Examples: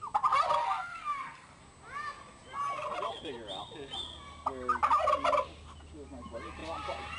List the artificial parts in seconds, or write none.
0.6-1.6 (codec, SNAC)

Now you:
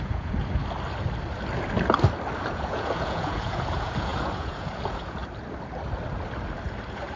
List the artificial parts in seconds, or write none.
0.0-0.6 (vocoder, Vocos); 2.4-5.2